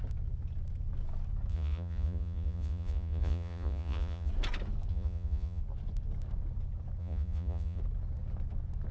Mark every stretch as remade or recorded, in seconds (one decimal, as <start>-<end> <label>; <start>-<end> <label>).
0.0-1.5 recorded; 1.5-4.3 remade; 4.3-4.9 recorded; 4.9-5.6 remade; 5.6-7.0 recorded; 7.0-7.8 remade; 7.8-8.9 recorded